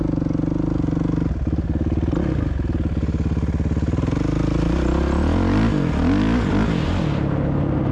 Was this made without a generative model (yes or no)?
yes